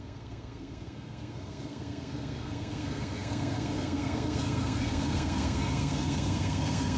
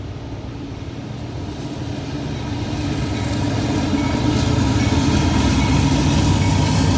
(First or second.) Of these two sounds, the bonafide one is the second